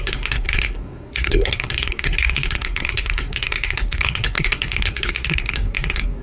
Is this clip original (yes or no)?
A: no